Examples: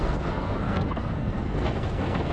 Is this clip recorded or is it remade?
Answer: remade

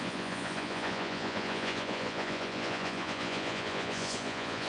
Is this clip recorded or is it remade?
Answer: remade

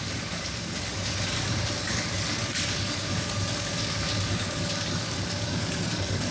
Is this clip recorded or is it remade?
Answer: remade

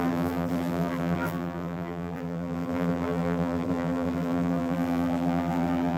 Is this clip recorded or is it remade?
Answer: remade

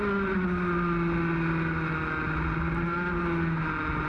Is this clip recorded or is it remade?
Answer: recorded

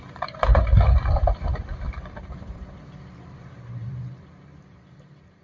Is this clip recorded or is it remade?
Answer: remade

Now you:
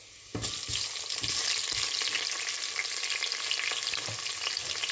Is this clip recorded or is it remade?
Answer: recorded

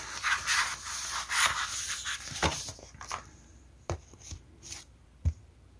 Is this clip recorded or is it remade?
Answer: remade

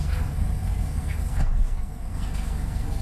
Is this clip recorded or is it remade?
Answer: remade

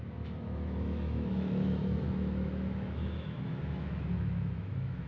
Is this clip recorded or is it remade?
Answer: remade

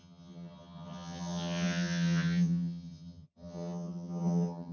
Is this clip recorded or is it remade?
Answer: remade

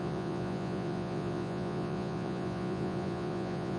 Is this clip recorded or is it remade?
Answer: remade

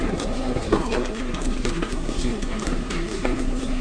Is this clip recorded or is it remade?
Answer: remade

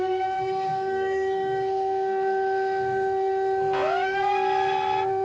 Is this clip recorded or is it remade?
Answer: remade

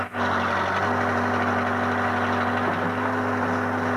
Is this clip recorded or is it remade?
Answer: recorded